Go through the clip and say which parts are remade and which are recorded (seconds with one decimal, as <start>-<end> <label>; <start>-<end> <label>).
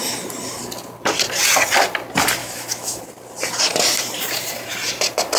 0.0-2.4 recorded; 2.4-3.0 remade; 3.0-5.4 recorded